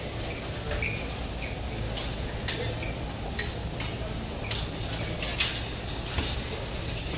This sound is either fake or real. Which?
real